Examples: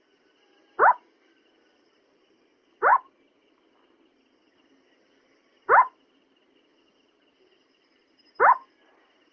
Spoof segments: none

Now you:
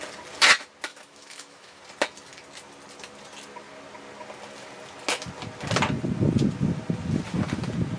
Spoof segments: 0.9-1.8

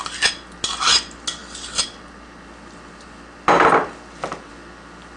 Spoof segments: none

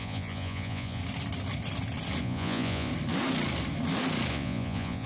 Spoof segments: 0.0-1.0; 2.2-2.9; 4.3-5.1

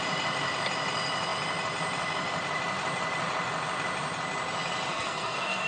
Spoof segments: 4.9-5.7

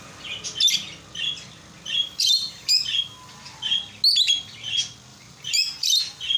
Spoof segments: 2.0-2.7; 5.1-6.0